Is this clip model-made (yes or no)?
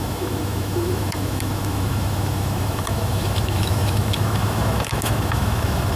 yes